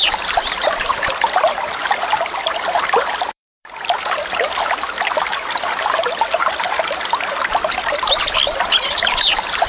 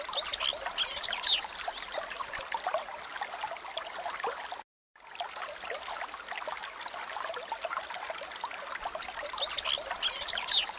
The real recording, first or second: second